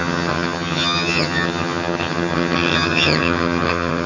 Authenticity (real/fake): fake